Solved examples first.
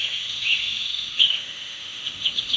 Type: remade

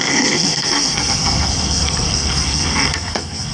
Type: remade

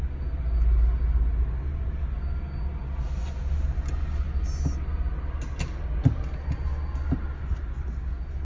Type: recorded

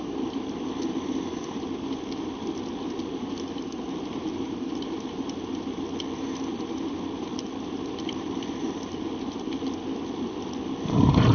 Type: recorded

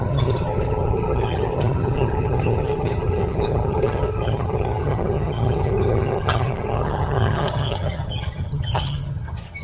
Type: remade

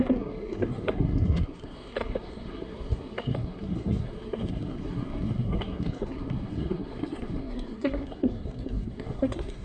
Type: remade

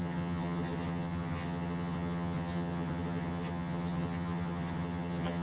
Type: remade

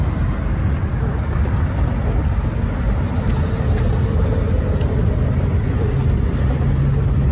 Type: recorded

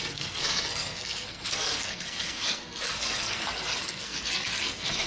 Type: remade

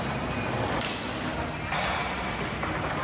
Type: recorded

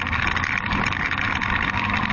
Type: recorded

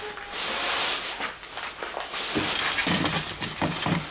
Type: recorded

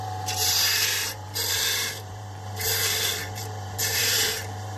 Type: remade